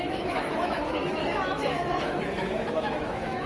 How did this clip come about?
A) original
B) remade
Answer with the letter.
B